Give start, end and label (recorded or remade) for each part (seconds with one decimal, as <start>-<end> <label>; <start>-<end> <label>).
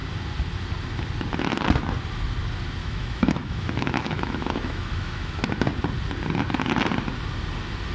0.0-2.8 recorded; 2.8-5.4 remade; 5.4-7.9 recorded